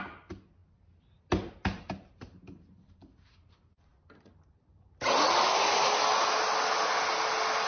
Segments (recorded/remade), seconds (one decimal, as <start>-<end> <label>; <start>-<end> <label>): 0.0-7.7 recorded